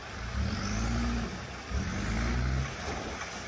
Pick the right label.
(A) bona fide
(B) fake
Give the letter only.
A